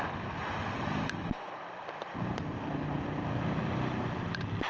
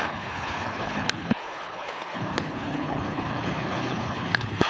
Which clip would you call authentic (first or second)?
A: first